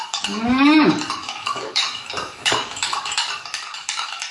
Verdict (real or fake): fake